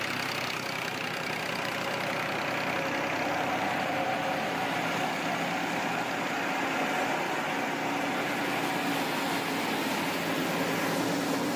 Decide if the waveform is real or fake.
real